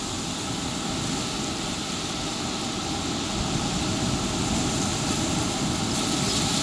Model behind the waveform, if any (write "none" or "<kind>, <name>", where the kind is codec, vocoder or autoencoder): none